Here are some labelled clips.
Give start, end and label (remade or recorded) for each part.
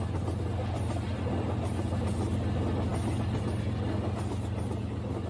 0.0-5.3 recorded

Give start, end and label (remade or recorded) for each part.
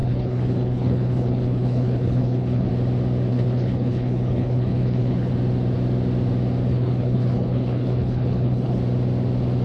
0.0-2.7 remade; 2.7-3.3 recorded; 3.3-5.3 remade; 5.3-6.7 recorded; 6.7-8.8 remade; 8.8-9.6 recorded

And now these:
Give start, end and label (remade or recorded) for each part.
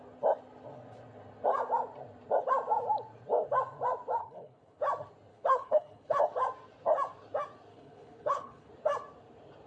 0.0-4.2 recorded; 4.2-4.8 remade; 4.8-5.3 recorded; 5.3-6.2 remade; 6.2-7.7 recorded; 7.7-8.7 remade; 8.7-9.7 recorded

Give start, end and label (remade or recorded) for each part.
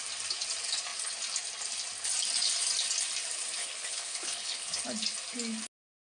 0.0-3.6 recorded; 3.6-4.8 remade; 4.8-6.0 recorded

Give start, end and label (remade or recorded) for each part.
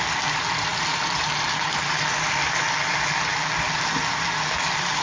0.0-5.0 recorded